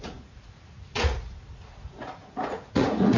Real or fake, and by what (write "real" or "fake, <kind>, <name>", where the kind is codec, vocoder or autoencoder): fake, vocoder, Vocos